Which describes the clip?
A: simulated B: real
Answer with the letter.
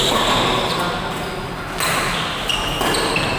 B